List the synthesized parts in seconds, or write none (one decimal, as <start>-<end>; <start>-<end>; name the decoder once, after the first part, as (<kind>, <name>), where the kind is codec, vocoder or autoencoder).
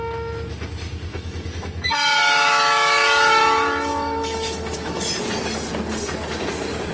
1.1-5.2 (autoencoder, DAC-VAE)